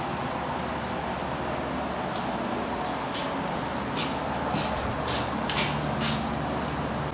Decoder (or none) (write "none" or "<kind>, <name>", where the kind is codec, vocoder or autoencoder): none